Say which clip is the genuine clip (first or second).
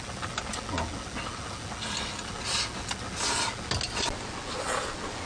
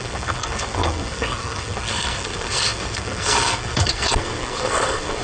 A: first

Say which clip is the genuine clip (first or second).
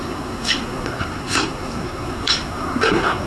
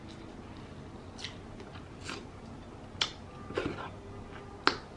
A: second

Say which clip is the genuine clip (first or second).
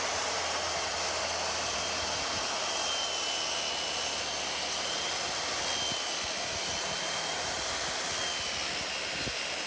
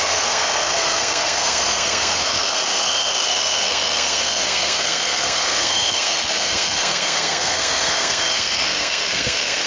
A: first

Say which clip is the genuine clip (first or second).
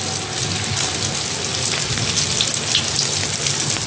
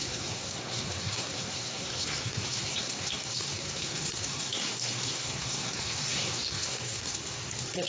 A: first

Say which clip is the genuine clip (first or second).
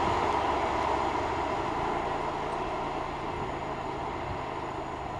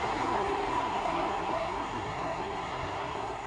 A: first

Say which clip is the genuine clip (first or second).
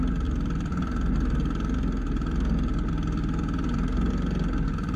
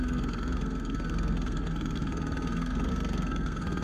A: first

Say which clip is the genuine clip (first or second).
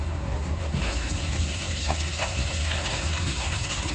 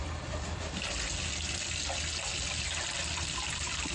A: second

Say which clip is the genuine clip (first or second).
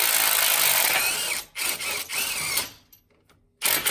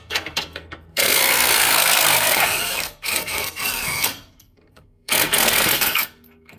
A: first